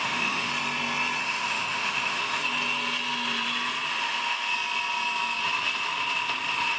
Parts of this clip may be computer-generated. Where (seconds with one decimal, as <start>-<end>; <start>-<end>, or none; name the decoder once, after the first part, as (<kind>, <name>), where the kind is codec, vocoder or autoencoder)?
0.0-0.5 (autoencoder, DAC-VAE); 1.2-2.4; 3.9-4.5